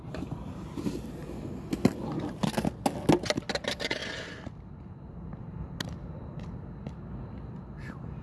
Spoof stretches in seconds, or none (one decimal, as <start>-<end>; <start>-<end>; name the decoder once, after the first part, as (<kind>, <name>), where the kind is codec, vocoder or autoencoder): 0.0-1.2 (vocoder, BigVGAN v2); 2.0-2.4; 3.6-4.0